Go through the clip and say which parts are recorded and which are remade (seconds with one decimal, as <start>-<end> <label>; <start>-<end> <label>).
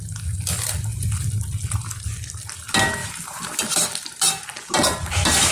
0.0-3.0 recorded; 3.0-3.6 remade; 3.6-5.5 recorded